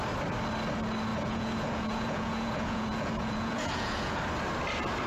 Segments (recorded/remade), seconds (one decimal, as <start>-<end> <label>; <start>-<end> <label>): 0.0-1.1 recorded; 1.1-4.2 remade; 4.2-5.1 recorded